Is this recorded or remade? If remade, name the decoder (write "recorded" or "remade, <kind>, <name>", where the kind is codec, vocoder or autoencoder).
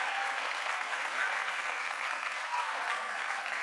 remade, codec, SNAC